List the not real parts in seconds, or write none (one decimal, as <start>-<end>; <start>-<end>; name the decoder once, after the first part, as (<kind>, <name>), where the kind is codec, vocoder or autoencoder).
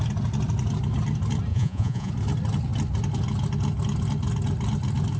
1.5-2.1 (vocoder, Vocos)